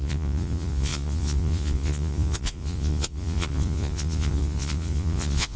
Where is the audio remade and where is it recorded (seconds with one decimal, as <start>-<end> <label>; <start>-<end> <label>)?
0.0-5.6 remade

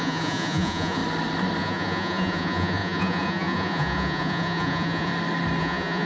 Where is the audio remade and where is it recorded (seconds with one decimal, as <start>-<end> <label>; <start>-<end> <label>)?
0.0-1.0 remade; 1.0-1.6 recorded; 1.6-5.1 remade; 5.1-5.6 recorded; 5.6-6.1 remade

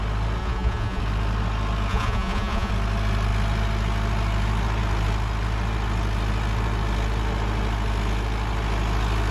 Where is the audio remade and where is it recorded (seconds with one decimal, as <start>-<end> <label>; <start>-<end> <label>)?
0.0-0.4 recorded; 0.4-1.0 remade; 1.0-1.9 recorded; 1.9-2.7 remade; 2.7-9.3 recorded

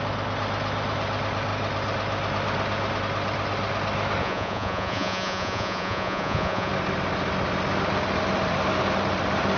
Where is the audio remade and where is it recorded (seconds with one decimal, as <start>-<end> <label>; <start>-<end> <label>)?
0.0-4.2 recorded; 4.2-6.7 remade; 6.7-9.6 recorded

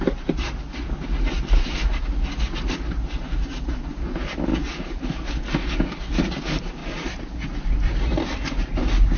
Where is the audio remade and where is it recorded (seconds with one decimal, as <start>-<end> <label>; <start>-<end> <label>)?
0.0-9.2 recorded

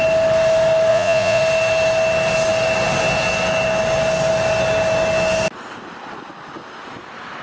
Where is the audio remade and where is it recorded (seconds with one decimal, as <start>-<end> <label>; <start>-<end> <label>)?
0.0-0.9 recorded; 0.9-1.4 remade; 1.4-7.4 recorded

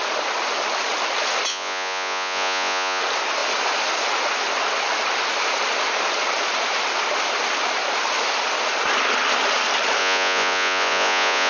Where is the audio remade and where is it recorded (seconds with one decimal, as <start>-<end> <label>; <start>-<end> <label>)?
0.0-1.5 recorded; 1.5-3.0 remade; 3.0-10.0 recorded; 10.0-11.5 remade